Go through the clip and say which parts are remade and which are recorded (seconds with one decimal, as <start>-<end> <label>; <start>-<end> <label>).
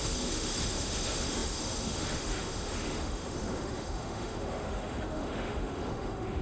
0.0-6.4 remade